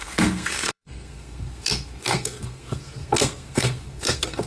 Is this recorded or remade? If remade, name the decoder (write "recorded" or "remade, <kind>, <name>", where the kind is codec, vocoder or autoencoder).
remade, codec, SNAC